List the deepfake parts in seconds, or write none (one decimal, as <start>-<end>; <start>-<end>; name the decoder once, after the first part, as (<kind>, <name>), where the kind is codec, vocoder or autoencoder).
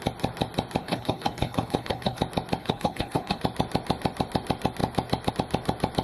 0.8-2.2 (codec, HILCodec); 2.6-3.4